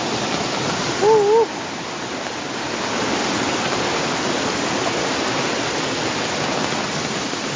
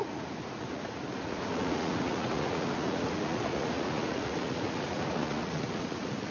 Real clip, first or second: first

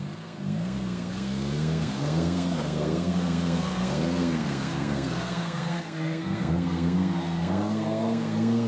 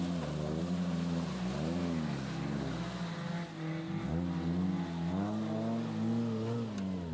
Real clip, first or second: second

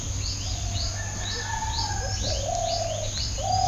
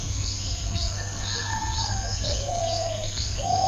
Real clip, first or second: first